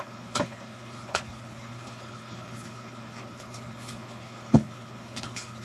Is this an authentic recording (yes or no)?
no